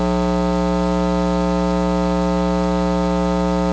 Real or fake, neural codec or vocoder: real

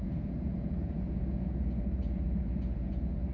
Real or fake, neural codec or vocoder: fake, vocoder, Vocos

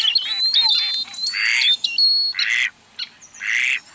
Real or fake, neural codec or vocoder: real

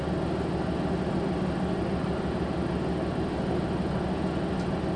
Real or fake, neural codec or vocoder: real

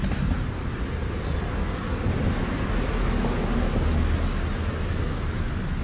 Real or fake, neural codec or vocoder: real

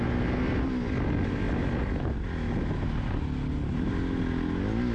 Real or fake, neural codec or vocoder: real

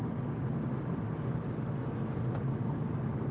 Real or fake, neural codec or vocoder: real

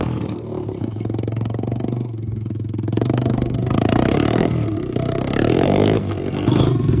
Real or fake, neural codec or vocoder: fake, codec, SNAC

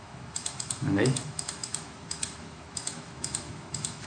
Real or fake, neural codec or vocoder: fake, autoencoder, DAC-VAE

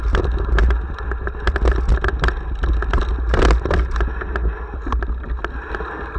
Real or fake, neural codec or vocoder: real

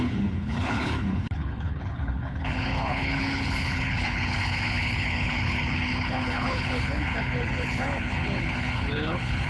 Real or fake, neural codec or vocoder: fake, codec, HILCodec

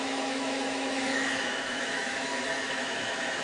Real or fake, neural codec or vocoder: fake, autoencoder, DAC-VAE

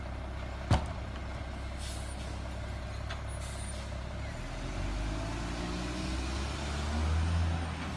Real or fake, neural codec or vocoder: real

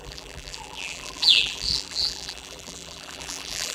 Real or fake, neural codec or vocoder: fake, vocoder, BigVGAN v2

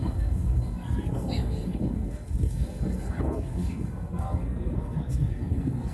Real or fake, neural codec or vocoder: fake, codec, SNAC